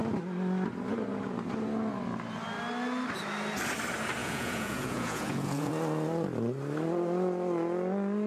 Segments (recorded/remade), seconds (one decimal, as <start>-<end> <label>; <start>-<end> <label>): 0.0-4.2 recorded; 4.2-5.7 remade; 5.7-8.3 recorded